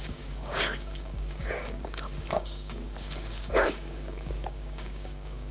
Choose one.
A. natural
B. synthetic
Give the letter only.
B